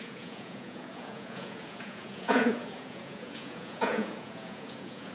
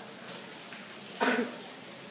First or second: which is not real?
first